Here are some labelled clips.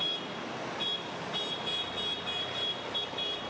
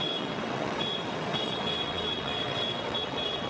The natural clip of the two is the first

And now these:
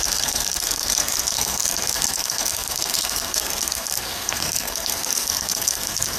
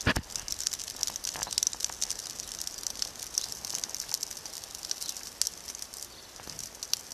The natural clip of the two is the second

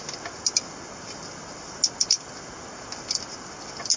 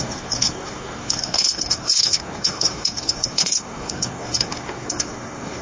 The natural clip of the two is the first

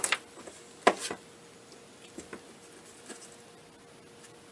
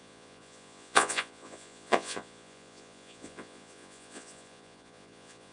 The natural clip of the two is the first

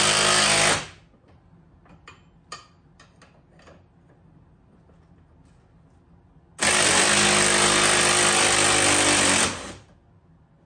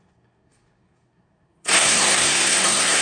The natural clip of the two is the first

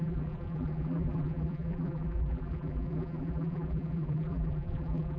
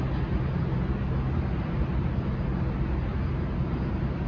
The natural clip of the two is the second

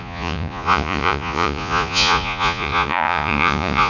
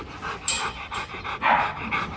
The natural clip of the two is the second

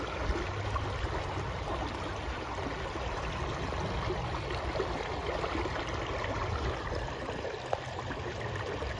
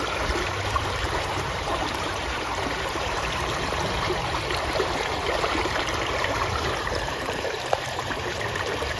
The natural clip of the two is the first